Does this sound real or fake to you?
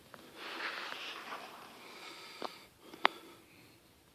real